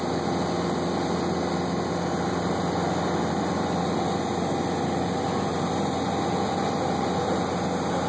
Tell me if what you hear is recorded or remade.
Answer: recorded